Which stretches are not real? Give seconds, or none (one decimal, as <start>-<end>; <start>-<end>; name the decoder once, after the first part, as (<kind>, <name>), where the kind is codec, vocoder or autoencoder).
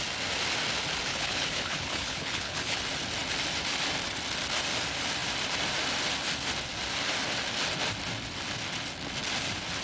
1.1-2.8 (codec, HILCodec)